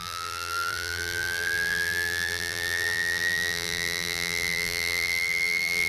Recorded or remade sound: remade